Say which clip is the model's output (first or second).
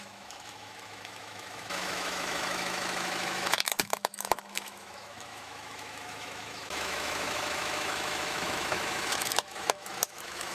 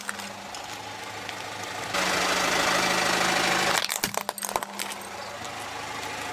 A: first